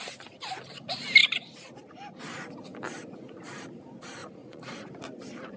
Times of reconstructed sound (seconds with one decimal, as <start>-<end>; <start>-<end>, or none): 4.2-4.9